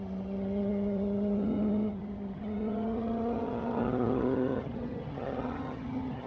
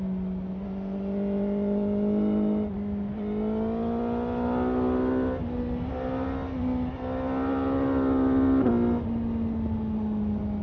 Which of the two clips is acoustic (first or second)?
second